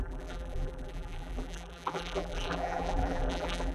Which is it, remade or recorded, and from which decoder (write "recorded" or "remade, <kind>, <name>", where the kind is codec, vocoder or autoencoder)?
remade, vocoder, BigVGAN v2